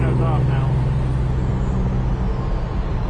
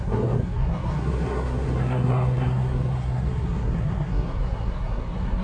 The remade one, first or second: second